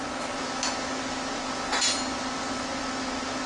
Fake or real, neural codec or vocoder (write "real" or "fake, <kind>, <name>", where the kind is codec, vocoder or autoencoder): real